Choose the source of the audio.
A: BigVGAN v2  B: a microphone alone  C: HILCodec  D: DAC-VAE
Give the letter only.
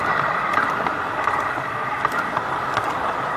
A